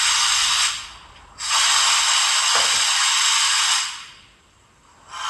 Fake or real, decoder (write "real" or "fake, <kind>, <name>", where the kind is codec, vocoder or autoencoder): real